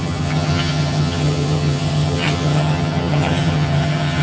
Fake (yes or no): yes